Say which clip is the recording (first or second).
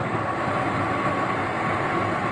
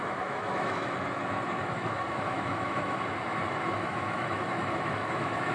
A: first